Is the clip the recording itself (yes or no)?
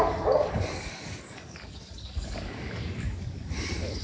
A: no